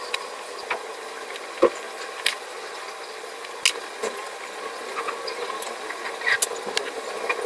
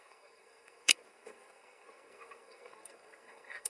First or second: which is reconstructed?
second